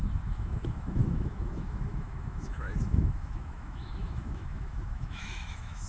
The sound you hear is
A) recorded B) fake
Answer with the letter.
B